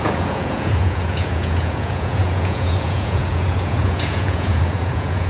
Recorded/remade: remade